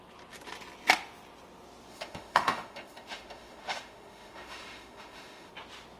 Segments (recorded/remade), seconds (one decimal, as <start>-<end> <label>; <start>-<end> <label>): 0.0-1.9 recorded; 1.9-5.5 remade; 5.5-6.0 recorded